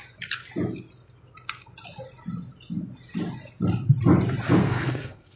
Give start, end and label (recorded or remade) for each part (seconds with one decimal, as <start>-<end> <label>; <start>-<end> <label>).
0.0-4.6 recorded; 4.6-5.4 remade